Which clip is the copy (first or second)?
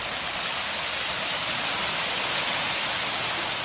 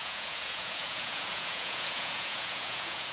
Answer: second